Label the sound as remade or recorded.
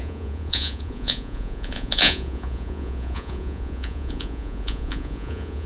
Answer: remade